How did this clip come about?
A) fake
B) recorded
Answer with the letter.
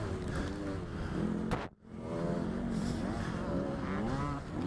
B